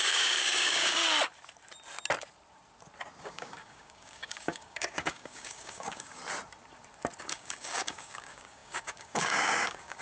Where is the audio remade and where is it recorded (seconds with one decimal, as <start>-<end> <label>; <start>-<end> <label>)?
0.0-1.0 remade; 1.0-3.2 recorded; 3.2-6.2 remade; 6.2-7.2 recorded; 7.2-10.0 remade